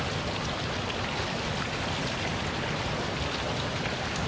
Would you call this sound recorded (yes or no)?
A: yes